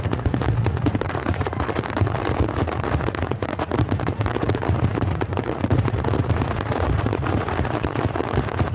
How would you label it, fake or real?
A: fake